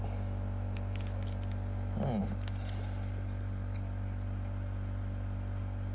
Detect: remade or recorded recorded